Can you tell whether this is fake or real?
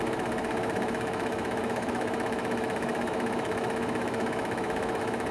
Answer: fake